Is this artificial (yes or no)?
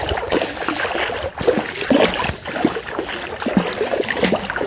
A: no